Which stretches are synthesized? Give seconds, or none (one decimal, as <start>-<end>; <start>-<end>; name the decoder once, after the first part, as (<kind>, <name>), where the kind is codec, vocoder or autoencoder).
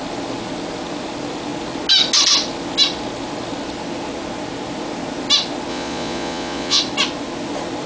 5.7-6.8 (vocoder, Vocos)